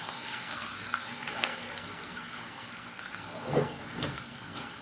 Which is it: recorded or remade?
remade